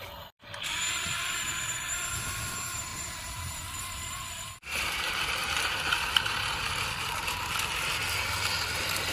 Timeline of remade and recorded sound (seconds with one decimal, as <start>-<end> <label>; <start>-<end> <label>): 0.0-2.9 recorded; 2.9-4.9 remade; 4.9-5.4 recorded; 5.4-6.6 remade; 6.6-9.1 recorded